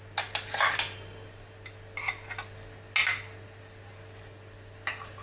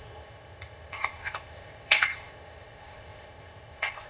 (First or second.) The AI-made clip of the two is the second